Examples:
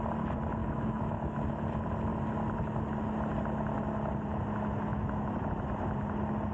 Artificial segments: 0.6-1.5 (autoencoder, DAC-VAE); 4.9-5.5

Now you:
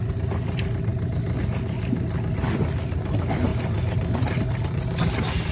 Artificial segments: 3.5-4.4 (vocoder, BigVGAN v2)